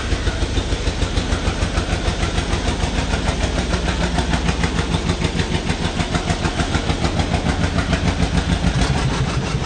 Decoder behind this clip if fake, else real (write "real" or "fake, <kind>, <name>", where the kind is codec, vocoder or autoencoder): real